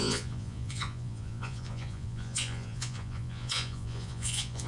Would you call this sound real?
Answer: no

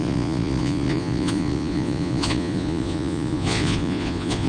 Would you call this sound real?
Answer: no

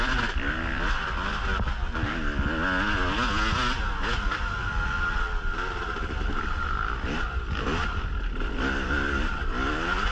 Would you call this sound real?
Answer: yes